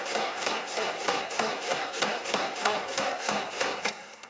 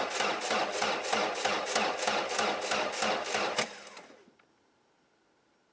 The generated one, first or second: first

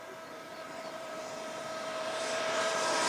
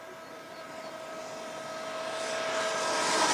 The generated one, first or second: first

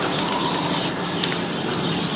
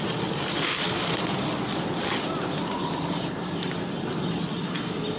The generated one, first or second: second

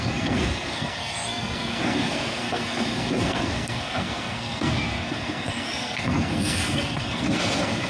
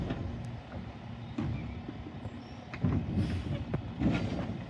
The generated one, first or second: first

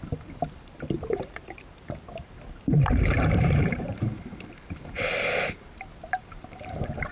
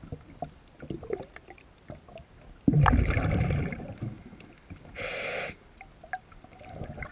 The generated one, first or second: first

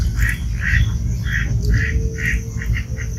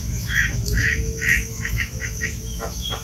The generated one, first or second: second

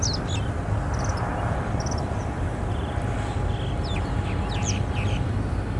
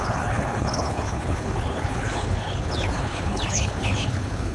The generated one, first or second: second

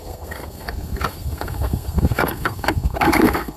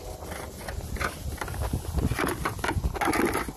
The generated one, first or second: first